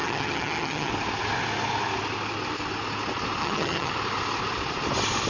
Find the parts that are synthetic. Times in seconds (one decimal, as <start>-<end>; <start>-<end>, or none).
0.0-0.9; 3.4-3.9